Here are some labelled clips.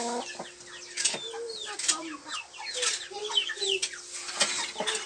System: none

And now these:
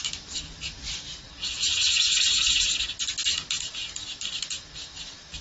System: none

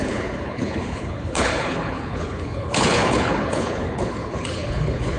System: codec, HILCodec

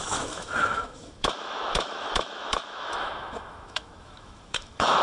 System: autoencoder, DAC-VAE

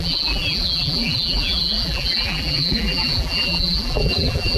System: vocoder, BigVGAN v2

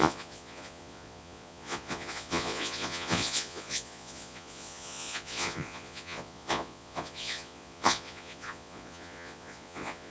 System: vocoder, Vocos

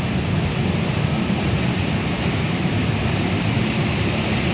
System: none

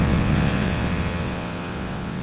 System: vocoder, WaveNeXt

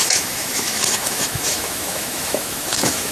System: autoencoder, DAC-VAE